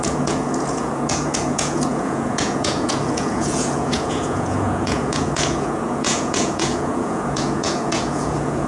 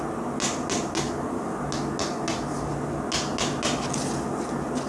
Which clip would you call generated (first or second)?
first